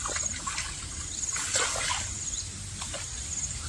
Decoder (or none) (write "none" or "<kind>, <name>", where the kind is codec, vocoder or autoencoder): none